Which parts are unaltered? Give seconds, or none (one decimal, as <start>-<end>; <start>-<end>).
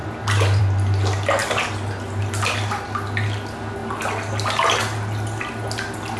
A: 0.0-6.2